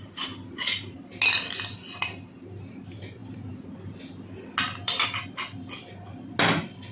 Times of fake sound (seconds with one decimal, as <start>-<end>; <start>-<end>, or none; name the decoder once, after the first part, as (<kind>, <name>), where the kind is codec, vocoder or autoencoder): none